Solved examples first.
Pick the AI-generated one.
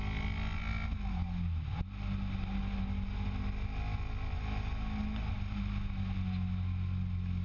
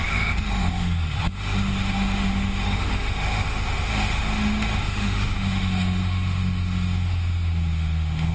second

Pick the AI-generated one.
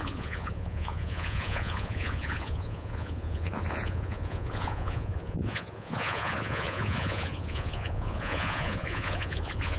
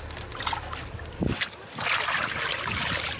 first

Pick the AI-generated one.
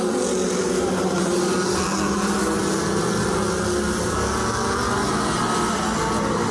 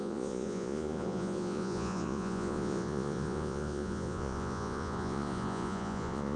second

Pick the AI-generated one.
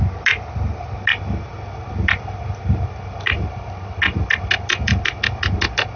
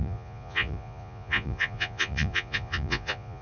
second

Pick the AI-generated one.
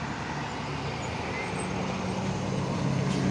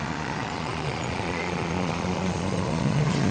second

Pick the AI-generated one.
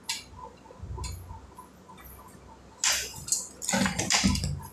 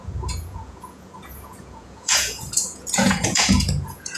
second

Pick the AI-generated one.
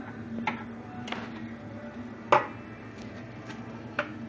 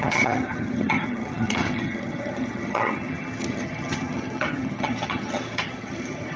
second